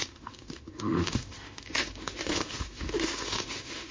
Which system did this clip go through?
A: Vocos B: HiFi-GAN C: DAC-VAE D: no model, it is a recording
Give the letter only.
C